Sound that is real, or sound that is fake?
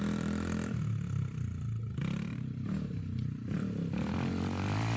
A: real